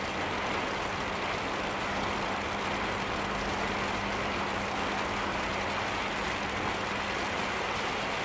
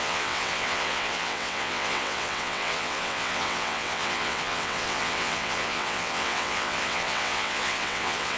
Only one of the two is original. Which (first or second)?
first